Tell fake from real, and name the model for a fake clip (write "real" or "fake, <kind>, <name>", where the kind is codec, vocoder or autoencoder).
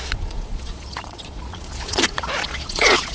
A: fake, vocoder, Vocos